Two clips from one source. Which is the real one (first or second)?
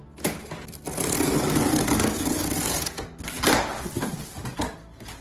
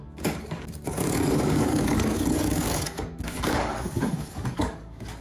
first